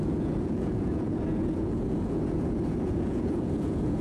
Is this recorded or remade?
remade